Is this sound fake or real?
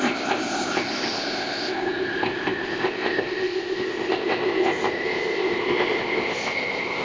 fake